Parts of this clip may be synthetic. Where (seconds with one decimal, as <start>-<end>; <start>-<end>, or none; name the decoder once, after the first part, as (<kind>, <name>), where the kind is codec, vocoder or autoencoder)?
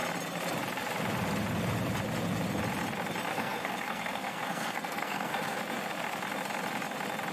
3.3-5.6 (codec, SNAC)